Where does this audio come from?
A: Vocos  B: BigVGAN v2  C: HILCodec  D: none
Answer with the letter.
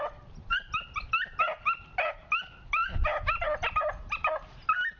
D